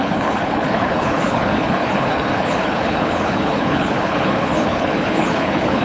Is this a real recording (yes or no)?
no